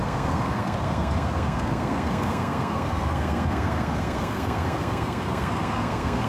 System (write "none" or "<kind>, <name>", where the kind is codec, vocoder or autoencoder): codec, SNAC